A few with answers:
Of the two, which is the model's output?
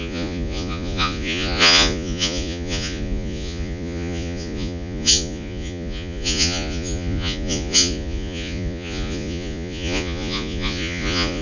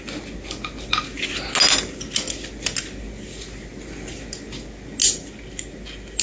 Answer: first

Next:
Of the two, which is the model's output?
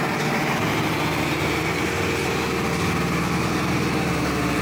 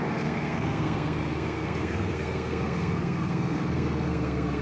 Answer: second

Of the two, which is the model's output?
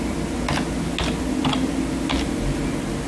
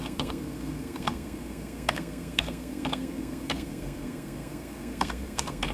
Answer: second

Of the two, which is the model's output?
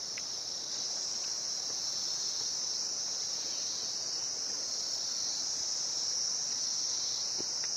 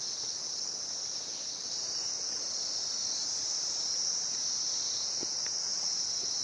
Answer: first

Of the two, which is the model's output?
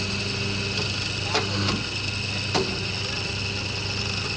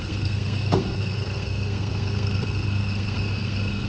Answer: second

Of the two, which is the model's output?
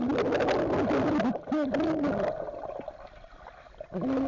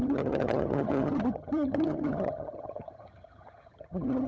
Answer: second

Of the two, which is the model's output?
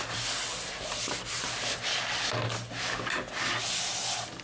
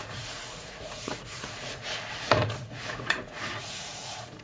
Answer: second